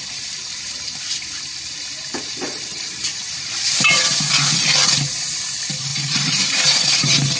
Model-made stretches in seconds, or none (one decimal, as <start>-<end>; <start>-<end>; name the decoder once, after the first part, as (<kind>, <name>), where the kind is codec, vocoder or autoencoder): 3.1-4.2 (vocoder, BigVGAN v2); 5.9-7.4